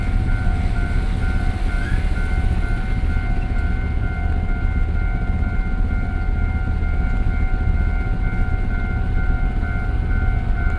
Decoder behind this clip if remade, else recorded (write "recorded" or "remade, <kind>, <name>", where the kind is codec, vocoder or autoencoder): recorded